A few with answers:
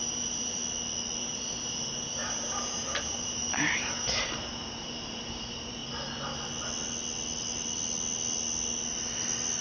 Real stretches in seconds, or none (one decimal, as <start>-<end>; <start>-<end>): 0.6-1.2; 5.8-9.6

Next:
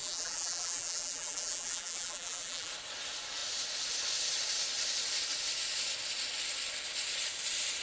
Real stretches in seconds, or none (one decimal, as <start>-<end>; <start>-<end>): 2.7-7.8

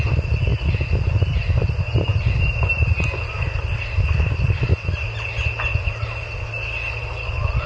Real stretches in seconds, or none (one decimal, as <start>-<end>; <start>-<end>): 0.0-7.7

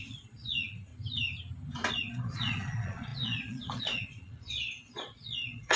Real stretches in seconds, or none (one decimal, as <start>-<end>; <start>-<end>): 0.9-1.9

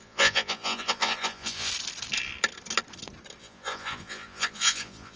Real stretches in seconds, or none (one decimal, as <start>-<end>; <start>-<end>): 1.7-3.4

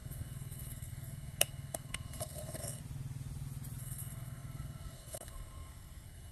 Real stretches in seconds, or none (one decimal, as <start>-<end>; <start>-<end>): 2.8-3.8

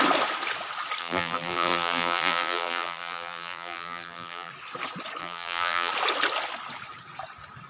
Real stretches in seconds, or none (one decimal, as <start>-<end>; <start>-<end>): 0.0-1.0; 4.5-5.2; 5.9-7.7

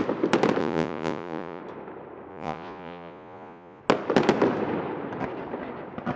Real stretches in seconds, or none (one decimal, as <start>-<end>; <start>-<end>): 0.0-0.6; 1.6-2.3; 3.8-6.2